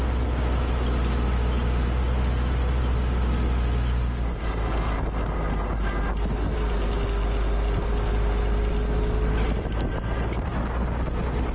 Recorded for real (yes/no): yes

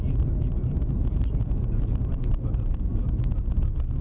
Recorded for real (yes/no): yes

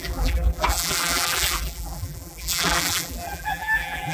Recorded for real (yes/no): no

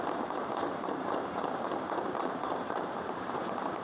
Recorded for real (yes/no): no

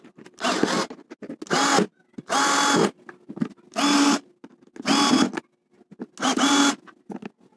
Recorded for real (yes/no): yes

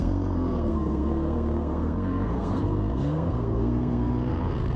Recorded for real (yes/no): no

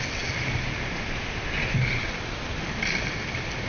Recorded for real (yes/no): yes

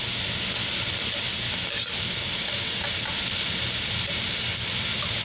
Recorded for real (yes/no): yes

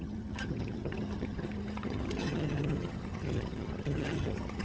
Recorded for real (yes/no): no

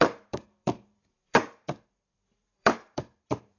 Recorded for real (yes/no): no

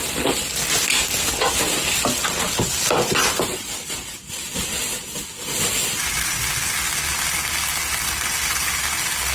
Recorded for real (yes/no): yes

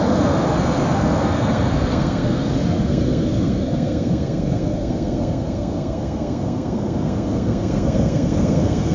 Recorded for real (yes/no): no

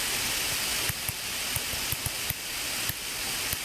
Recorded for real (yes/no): yes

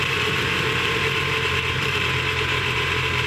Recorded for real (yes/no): no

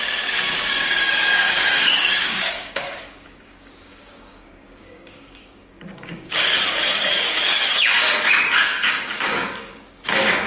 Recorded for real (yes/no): no